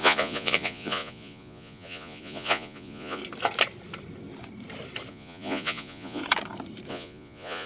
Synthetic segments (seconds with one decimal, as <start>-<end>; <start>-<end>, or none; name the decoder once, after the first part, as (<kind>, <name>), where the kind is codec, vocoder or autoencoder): 0.0-3.2 (vocoder, Vocos); 5.1-6.2; 6.9-7.7